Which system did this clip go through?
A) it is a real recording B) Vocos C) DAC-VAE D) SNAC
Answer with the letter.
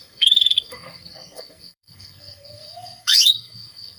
D